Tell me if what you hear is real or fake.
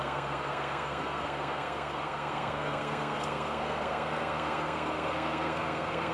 fake